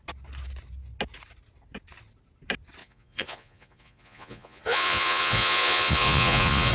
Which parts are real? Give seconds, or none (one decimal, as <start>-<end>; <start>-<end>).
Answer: 0.0-2.8

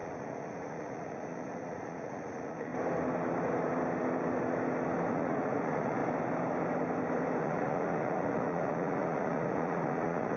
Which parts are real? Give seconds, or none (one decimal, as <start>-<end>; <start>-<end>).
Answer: 2.7-5.1; 6.0-7.4